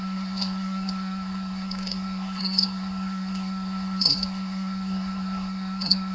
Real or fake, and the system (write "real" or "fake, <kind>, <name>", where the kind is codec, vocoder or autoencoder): fake, codec, SNAC